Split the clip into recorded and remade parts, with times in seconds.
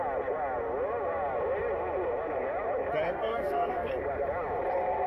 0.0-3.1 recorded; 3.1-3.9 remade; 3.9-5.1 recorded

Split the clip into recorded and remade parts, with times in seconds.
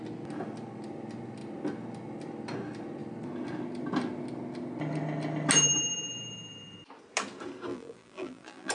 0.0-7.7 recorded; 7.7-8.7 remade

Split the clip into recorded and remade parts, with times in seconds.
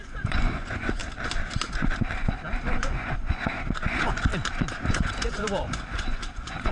0.0-1.0 remade; 1.0-2.8 recorded; 2.8-4.3 remade; 4.3-4.9 recorded; 4.9-6.7 remade